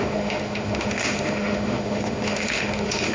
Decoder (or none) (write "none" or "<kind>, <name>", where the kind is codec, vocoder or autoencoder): autoencoder, DAC-VAE